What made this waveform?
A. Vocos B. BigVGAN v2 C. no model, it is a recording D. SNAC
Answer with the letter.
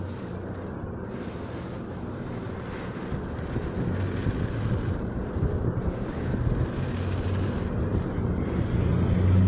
C